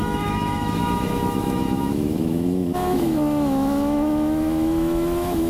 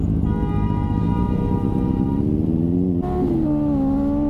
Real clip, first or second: second